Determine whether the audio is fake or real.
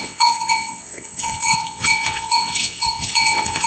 fake